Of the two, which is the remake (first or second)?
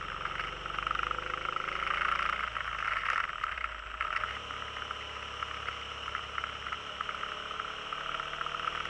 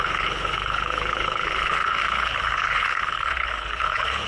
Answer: second